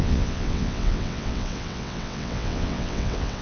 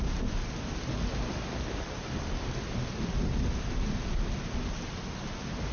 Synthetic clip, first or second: first